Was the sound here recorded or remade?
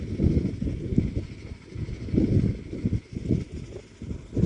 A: recorded